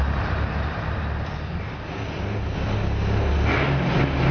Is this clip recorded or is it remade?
recorded